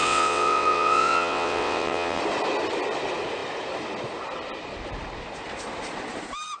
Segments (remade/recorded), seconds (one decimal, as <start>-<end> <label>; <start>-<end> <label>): 0.0-2.2 remade; 2.2-6.6 recorded